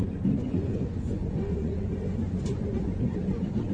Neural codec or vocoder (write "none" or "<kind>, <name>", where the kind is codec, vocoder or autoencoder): vocoder, Vocos